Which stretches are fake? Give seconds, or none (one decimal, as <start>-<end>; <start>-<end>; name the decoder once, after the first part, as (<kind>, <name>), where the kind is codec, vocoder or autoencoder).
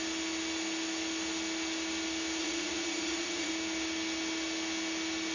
2.4-3.5 (vocoder, Vocos)